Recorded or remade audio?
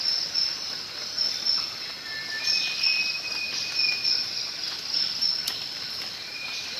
recorded